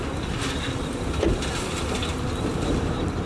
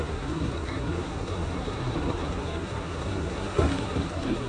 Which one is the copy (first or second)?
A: second